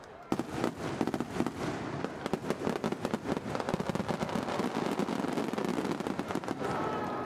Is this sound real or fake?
real